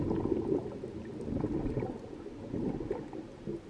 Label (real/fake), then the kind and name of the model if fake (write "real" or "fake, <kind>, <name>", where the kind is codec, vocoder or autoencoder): real